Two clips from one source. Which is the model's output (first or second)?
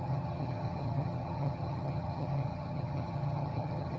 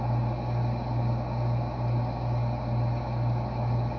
first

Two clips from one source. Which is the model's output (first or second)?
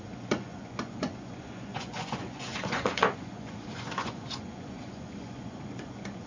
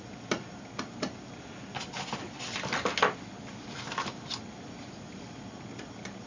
first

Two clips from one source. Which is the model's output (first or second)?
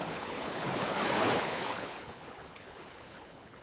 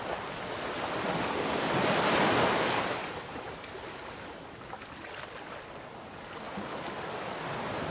first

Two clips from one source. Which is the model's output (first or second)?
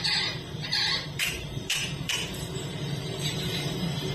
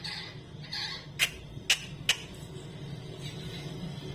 first